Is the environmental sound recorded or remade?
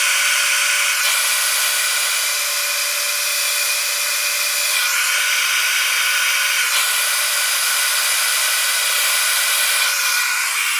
recorded